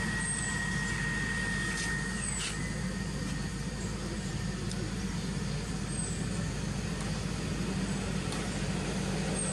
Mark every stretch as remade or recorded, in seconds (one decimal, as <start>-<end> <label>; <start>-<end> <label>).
0.0-9.5 recorded